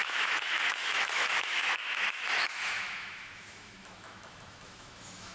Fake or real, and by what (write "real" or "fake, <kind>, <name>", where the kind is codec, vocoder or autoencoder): fake, autoencoder, DAC-VAE